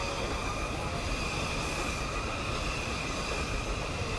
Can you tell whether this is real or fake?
real